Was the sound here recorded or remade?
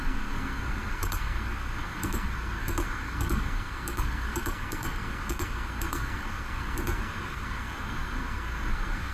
remade